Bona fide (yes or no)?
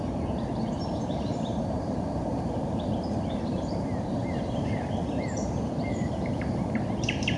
no